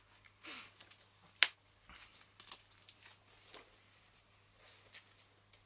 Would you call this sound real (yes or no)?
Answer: yes